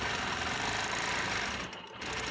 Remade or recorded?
recorded